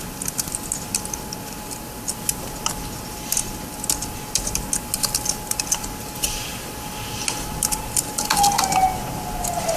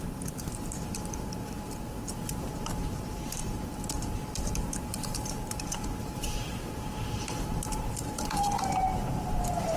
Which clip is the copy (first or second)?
second